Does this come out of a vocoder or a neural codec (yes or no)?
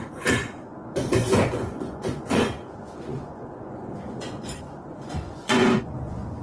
yes